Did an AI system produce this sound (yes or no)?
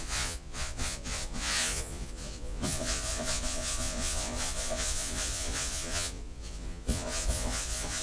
yes